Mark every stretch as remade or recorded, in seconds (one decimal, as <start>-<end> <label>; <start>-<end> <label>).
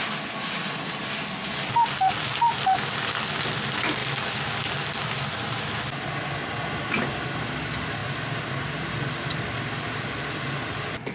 0.0-11.1 recorded